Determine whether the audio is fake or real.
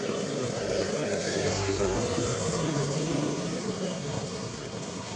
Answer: fake